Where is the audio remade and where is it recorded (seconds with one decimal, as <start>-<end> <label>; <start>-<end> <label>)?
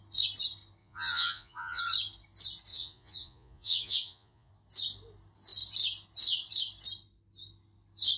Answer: 0.0-0.8 recorded; 0.8-1.8 remade; 1.8-2.7 recorded; 2.7-4.5 remade; 4.5-8.2 recorded